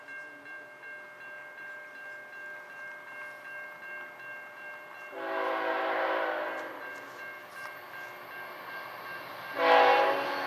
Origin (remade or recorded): recorded